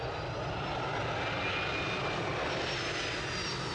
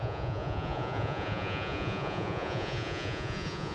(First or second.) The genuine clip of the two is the first